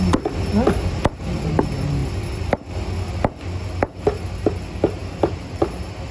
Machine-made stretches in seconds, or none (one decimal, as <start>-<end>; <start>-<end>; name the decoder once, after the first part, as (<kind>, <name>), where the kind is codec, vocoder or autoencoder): none